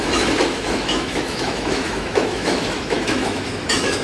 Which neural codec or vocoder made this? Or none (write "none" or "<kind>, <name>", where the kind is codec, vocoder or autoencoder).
autoencoder, DAC-VAE